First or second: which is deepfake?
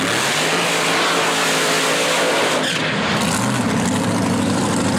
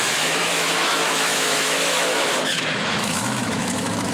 second